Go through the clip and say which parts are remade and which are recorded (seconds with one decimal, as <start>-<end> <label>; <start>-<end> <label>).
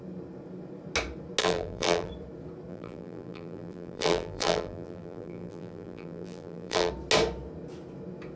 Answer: 0.0-1.4 recorded; 1.4-2.1 remade; 2.1-2.7 recorded; 2.7-6.9 remade; 6.9-8.3 recorded